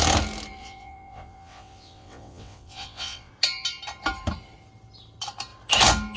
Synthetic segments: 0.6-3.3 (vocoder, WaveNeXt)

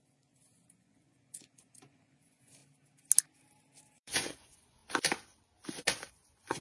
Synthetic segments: 0.0-2.6 (vocoder, Vocos); 3.9-4.8; 6.1-6.6

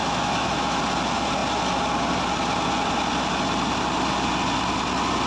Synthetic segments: 0.0-0.8 (autoencoder, DAC-VAE)

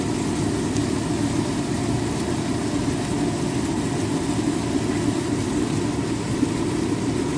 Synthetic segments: 0.0-1.8 (vocoder, BigVGAN v2); 6.2-7.4